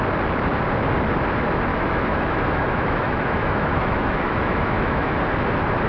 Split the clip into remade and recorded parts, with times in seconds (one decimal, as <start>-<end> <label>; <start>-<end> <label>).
0.0-1.7 recorded; 1.7-5.2 remade; 5.2-5.9 recorded

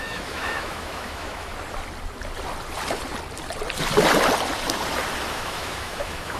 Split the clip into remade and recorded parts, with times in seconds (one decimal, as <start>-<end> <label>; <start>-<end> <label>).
0.0-1.5 remade; 1.5-5.3 recorded; 5.3-6.4 remade

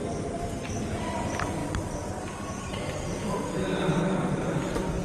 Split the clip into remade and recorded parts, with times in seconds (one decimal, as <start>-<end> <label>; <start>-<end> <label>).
0.0-5.0 recorded

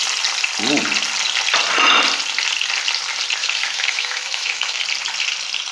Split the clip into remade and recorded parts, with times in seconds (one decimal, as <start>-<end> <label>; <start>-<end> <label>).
0.0-3.4 recorded; 3.4-4.8 remade; 4.8-5.7 recorded

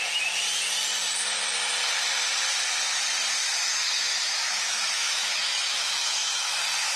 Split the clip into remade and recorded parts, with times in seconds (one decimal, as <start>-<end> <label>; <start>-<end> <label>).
0.0-3.4 recorded; 3.4-6.5 remade; 6.5-7.0 recorded